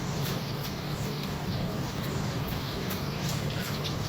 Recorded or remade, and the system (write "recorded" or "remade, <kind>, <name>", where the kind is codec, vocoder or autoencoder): remade, codec, DAC